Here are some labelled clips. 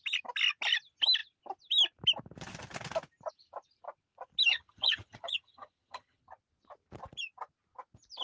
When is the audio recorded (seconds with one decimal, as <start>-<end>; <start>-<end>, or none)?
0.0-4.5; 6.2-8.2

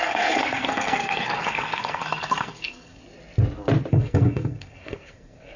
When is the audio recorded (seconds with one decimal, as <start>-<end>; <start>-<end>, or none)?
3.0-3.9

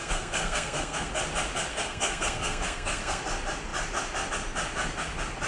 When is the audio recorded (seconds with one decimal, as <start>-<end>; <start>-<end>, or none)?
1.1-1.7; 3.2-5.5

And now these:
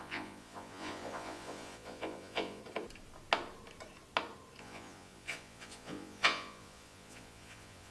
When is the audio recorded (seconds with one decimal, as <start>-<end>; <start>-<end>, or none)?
2.6-4.6